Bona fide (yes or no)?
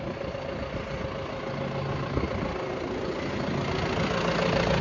yes